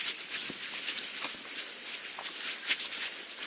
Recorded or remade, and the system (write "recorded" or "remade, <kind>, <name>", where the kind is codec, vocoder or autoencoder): recorded